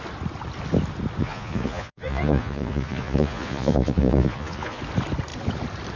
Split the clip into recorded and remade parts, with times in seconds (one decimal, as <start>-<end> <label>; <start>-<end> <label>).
0.0-1.2 recorded; 1.2-4.8 remade; 4.8-6.0 recorded

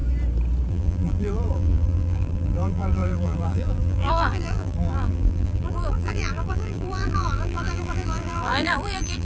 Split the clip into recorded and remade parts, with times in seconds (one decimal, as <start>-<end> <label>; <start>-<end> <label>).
0.0-0.7 recorded; 0.7-9.2 remade

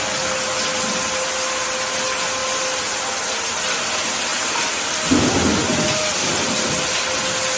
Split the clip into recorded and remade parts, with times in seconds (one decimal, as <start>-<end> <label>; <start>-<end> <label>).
0.0-7.6 recorded

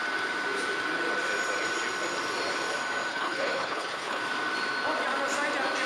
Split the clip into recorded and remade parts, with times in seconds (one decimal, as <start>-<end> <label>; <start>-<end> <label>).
0.0-3.1 recorded; 3.1-4.2 remade; 4.2-5.9 recorded